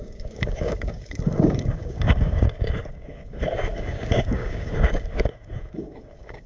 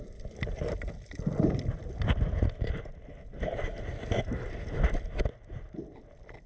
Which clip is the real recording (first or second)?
second